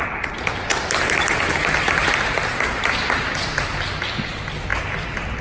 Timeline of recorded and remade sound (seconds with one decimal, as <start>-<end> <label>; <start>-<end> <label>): 0.0-0.7 recorded; 0.7-3.9 remade; 3.9-5.4 recorded